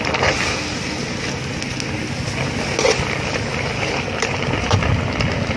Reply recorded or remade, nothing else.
recorded